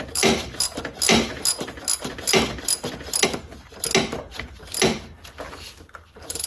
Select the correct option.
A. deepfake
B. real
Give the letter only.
B